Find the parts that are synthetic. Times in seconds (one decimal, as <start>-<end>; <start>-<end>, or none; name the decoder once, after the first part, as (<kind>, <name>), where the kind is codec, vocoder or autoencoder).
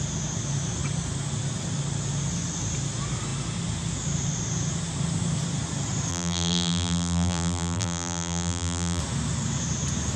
6.1-9.0 (vocoder, BigVGAN v2)